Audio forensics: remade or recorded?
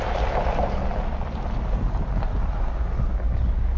recorded